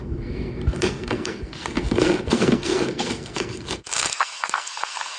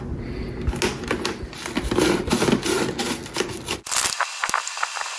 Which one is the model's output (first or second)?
first